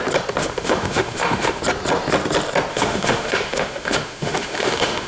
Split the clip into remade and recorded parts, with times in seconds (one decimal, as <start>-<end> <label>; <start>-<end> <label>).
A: 0.0-0.4 recorded; 0.4-1.6 remade; 1.6-2.7 recorded; 2.7-5.1 remade